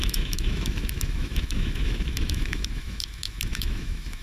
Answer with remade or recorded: remade